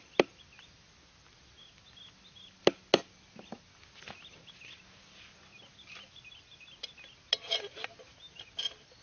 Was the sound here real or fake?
real